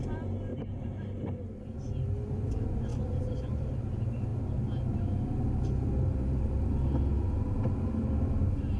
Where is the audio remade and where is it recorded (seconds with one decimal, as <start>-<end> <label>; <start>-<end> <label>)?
0.0-0.5 recorded; 0.5-1.2 remade; 1.2-2.9 recorded; 2.9-3.7 remade; 3.7-8.8 recorded